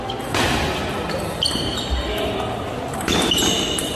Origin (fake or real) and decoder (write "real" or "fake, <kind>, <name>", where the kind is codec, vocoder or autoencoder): real